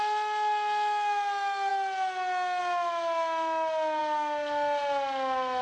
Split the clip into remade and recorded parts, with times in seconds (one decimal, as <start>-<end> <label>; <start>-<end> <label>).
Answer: 0.0-5.6 recorded